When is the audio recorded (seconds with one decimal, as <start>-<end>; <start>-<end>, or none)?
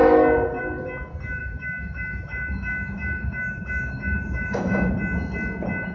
0.0-1.4; 4.9-5.9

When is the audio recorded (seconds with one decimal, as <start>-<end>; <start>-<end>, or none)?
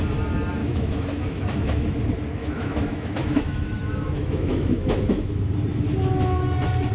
0.0-0.6; 2.0-2.4; 5.5-6.9